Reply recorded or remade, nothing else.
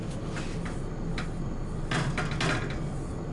recorded